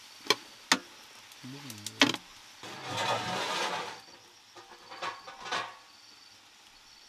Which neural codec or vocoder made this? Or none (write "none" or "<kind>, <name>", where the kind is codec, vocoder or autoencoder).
none